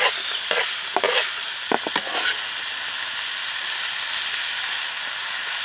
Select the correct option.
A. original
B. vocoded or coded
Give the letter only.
A